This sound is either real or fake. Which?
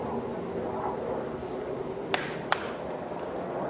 real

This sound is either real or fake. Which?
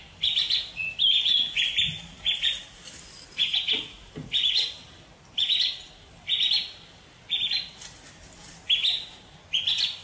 real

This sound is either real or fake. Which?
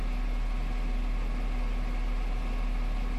real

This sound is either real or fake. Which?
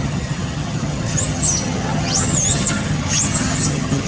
fake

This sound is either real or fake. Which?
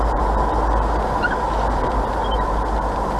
real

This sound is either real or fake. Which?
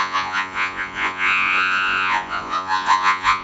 fake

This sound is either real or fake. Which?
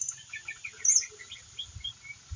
real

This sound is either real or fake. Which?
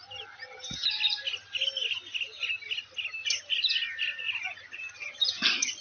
real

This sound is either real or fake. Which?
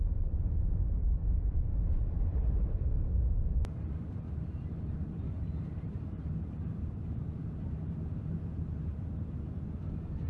fake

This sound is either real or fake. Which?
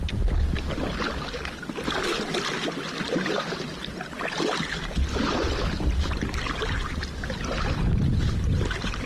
real